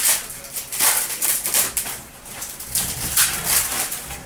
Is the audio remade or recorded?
remade